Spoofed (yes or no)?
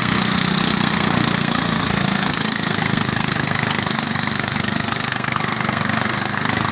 yes